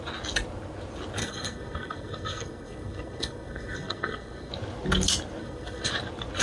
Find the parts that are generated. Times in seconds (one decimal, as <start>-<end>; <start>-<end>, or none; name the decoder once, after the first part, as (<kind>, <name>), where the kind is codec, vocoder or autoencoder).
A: 1.2-4.5 (codec, SNAC); 5.4-5.9